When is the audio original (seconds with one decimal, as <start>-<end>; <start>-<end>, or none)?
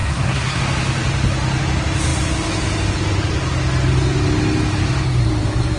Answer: 0.6-5.8